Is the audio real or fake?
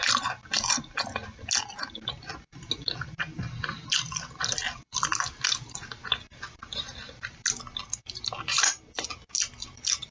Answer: real